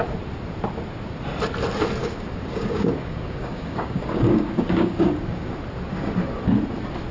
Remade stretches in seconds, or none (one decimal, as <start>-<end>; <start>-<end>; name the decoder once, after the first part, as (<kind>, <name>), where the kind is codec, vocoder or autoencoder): 2.0-5.5 (codec, DAC)